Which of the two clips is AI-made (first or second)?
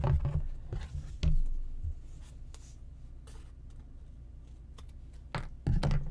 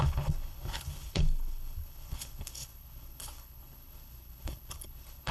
second